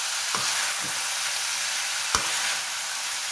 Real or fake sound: real